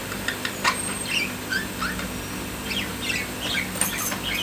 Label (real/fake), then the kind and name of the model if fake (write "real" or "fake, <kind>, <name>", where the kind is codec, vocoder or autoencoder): real